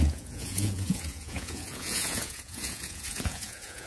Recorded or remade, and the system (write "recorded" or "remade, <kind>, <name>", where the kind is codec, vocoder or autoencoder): remade, vocoder, Vocos